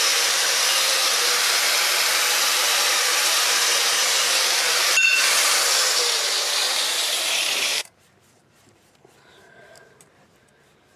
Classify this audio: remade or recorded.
remade